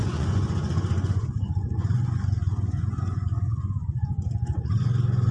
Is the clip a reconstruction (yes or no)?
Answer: yes